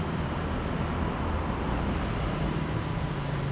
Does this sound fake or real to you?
real